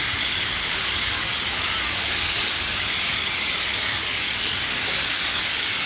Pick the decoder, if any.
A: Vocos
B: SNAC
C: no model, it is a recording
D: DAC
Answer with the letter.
D